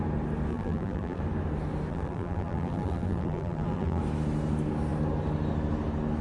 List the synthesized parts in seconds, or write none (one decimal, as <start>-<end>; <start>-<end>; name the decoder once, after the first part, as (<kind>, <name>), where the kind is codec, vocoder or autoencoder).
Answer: 0.5-1.2 (vocoder, BigVGAN v2); 1.9-4.0